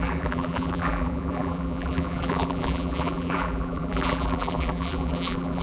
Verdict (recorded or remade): remade